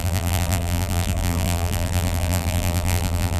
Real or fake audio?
fake